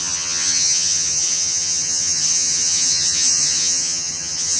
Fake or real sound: fake